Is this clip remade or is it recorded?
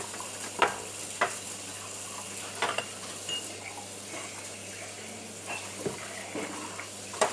recorded